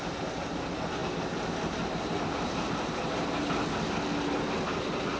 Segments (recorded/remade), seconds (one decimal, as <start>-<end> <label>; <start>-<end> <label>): 0.0-5.2 recorded